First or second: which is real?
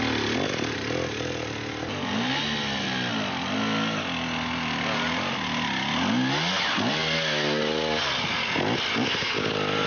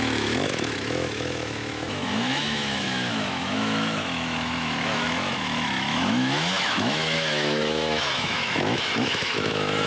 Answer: first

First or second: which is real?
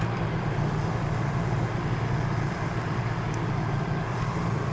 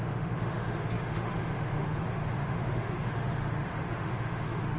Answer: first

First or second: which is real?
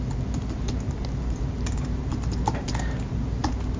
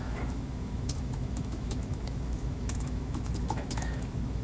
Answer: first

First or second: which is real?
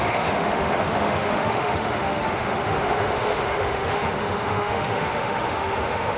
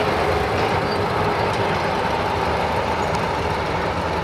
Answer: second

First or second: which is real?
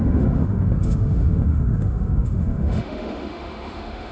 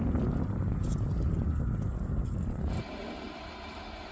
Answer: second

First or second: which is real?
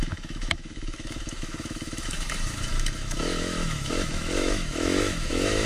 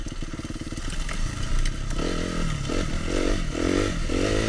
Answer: second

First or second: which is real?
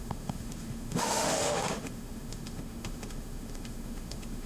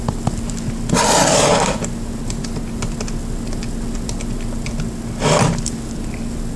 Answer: second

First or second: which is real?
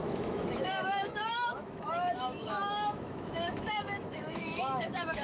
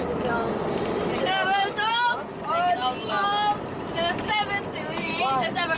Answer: second